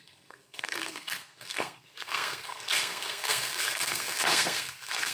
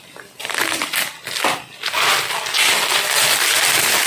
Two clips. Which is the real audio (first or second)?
second